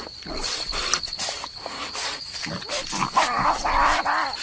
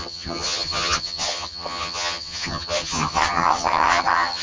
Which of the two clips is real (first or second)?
first